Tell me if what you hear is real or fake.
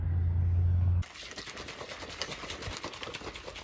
real